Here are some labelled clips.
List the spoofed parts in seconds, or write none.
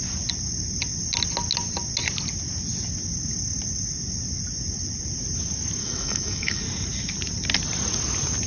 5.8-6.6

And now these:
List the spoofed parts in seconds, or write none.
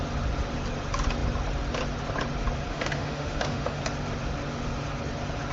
2.7-3.8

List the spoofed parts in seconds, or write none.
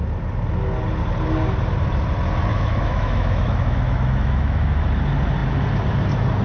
2.5-4.8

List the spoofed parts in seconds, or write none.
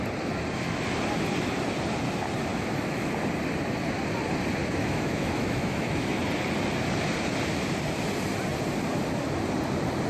2.5-3.1; 4.6-6.2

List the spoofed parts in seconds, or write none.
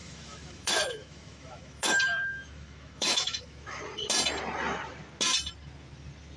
0.0-3.8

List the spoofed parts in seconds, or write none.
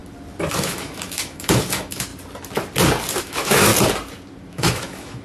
0.5-2.1; 3.2-3.7; 4.5-5.2